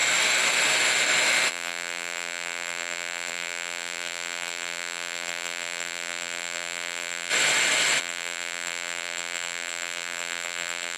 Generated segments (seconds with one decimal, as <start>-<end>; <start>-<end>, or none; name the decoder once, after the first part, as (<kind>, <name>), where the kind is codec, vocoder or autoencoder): 1.5-7.3 (vocoder, BigVGAN v2); 8.0-11.0

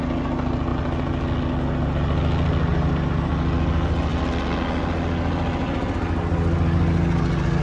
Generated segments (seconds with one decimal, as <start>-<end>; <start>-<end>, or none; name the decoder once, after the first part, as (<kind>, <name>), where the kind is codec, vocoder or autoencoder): 2.7-3.3 (vocoder, BigVGAN v2)

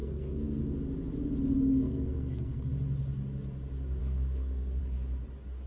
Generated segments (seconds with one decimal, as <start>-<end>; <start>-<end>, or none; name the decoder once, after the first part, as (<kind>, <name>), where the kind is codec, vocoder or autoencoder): 0.0-0.6 (codec, SNAC); 1.7-2.7; 4.0-4.8

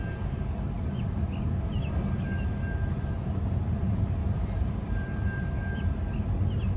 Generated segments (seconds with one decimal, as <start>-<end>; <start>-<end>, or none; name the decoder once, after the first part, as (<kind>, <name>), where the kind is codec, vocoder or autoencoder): 4.2-5.5 (vocoder, BigVGAN v2)